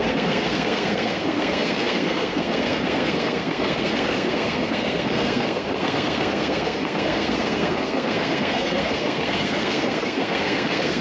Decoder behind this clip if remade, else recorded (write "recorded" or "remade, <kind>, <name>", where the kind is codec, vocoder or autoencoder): remade, codec, SNAC